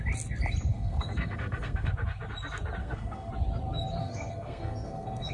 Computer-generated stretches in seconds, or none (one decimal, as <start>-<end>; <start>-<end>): 0.7-1.9; 2.8-3.3; 4.0-5.3